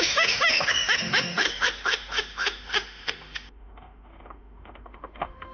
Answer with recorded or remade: remade